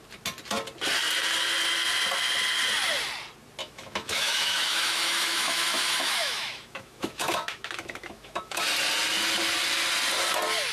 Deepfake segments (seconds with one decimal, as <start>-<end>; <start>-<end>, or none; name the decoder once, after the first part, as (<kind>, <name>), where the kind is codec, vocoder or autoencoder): 3.6-8.6 (autoencoder, DAC-VAE)

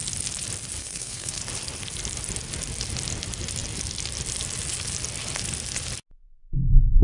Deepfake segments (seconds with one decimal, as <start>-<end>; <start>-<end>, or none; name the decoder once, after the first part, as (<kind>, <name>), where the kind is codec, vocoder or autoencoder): 0.8-1.4 (codec, SNAC)

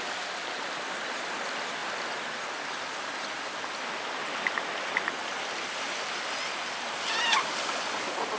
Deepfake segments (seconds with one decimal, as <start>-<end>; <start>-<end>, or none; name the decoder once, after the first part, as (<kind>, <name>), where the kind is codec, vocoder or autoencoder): none

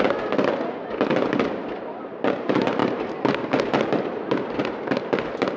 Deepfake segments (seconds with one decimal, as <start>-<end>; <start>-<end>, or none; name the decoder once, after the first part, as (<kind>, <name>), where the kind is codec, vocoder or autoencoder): none

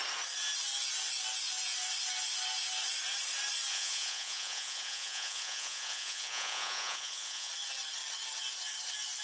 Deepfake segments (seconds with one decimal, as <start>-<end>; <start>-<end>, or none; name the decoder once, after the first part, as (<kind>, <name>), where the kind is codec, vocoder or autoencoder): 3.7-7.5 (vocoder, Vocos)